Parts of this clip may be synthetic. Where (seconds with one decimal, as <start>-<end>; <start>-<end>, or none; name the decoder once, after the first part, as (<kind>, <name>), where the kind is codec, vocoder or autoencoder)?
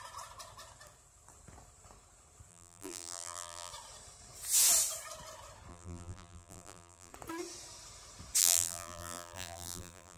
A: 2.5-3.7 (vocoder, BigVGAN v2); 5.7-7.1; 8.4-10.2